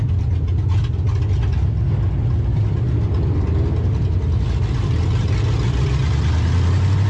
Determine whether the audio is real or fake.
real